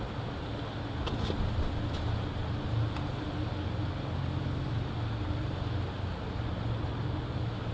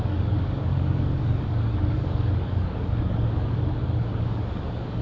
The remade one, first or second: second